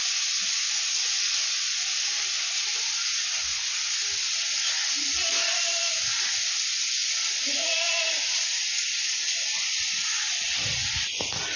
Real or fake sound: real